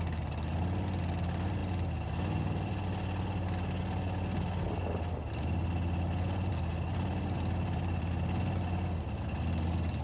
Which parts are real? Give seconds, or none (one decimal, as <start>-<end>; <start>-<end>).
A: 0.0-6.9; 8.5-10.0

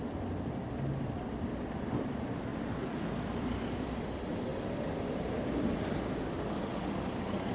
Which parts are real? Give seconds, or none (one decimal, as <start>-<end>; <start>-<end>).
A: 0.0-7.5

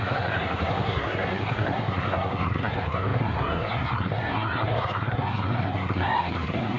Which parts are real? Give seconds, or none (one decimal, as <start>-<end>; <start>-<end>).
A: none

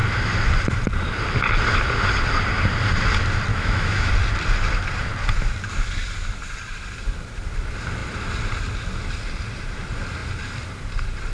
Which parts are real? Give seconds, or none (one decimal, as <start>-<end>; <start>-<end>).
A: 0.0-3.5; 4.1-11.3

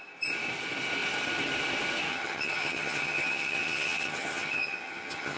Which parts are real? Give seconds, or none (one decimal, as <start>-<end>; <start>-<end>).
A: 0.0-2.1

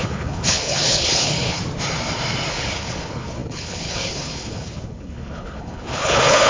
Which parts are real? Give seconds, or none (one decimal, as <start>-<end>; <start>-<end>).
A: 1.6-2.5